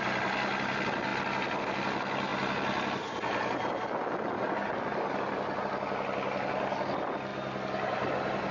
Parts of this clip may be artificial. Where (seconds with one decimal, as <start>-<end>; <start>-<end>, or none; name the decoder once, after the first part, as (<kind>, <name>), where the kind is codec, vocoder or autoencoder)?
none